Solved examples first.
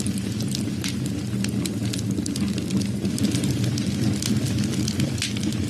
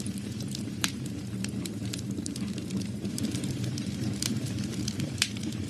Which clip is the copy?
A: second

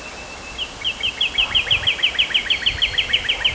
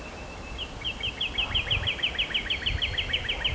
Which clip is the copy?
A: second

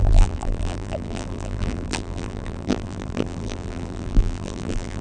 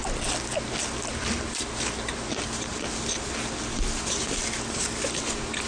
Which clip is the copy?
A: first